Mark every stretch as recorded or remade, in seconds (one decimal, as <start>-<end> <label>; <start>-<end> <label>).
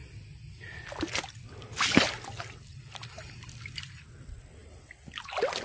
0.0-5.6 recorded